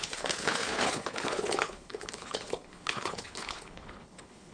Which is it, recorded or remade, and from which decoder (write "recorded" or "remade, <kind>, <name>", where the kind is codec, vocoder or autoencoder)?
remade, codec, HILCodec